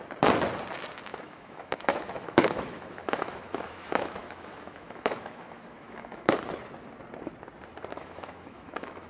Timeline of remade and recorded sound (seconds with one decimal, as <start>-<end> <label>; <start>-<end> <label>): 0.0-1.1 recorded; 1.1-6.3 remade; 6.3-7.9 recorded; 7.9-9.1 remade